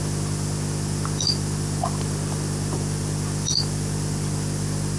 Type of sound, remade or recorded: recorded